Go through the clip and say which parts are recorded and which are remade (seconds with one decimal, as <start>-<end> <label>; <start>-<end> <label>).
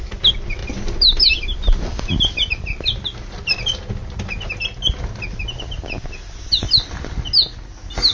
0.0-0.6 recorded; 0.6-2.1 remade; 2.1-8.1 recorded